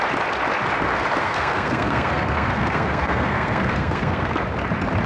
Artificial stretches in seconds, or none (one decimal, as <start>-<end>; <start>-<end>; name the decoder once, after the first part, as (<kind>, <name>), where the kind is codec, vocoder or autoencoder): 1.2-4.3 (codec, SNAC)